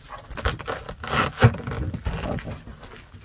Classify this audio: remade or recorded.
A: recorded